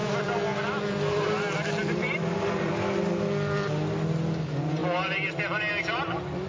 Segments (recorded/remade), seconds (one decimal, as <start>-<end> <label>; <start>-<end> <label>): 0.0-1.8 recorded; 1.8-2.7 remade; 2.7-6.5 recorded